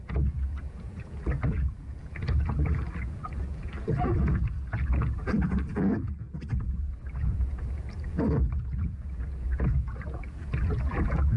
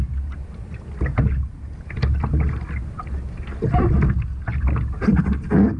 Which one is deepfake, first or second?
first